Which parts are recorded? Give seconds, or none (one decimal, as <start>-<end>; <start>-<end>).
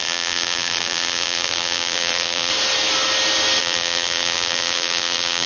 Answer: 2.5-3.6